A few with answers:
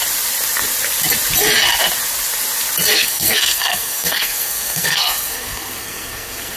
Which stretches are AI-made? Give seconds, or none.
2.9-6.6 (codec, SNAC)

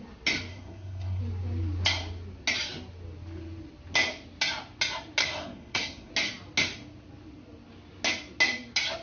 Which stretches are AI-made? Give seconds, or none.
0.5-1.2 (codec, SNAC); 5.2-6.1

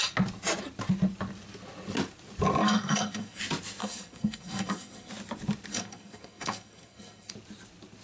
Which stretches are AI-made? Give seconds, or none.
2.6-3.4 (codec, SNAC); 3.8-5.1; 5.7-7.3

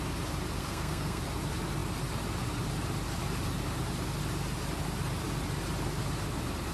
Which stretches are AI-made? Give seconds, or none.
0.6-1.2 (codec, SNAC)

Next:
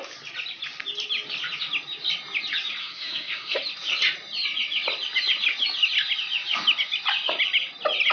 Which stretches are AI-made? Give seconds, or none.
2.8-3.6 (codec, SNAC)